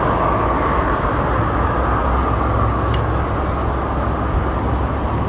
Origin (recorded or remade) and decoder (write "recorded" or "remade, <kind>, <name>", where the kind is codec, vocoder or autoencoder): recorded